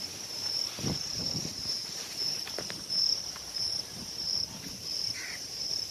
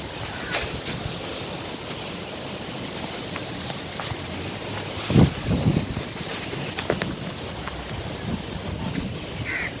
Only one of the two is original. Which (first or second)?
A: second